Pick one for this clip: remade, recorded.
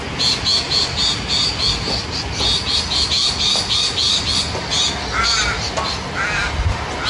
recorded